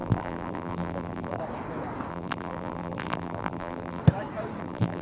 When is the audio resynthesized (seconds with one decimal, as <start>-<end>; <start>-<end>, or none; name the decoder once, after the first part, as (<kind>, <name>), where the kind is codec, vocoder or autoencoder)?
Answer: 0.0-1.4 (vocoder, BigVGAN v2); 2.1-4.0; 4.6-5.0